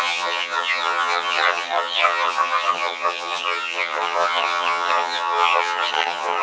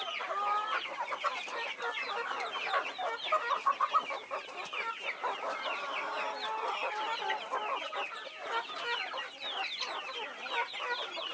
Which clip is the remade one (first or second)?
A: first